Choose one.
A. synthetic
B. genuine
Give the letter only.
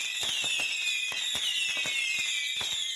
B